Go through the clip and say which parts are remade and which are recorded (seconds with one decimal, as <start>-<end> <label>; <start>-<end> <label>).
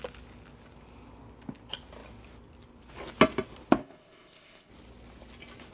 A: 0.0-3.8 recorded; 3.8-4.7 remade; 4.7-5.7 recorded